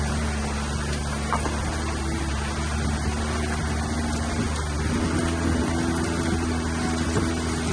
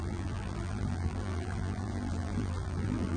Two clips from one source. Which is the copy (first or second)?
second